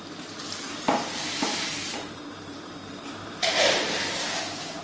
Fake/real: fake